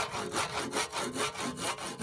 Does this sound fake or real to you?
real